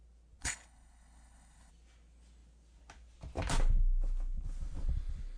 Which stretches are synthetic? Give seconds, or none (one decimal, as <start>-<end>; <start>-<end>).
0.4-1.7